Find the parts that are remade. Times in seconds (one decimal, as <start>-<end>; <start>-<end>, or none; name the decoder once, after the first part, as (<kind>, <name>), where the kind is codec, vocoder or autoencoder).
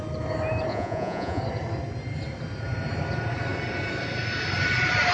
0.7-1.4 (vocoder, Vocos)